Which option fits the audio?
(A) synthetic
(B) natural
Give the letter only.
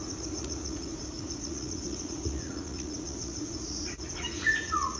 A